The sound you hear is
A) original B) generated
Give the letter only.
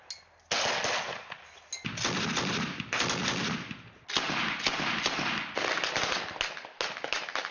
A